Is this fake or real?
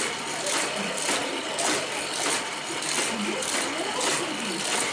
real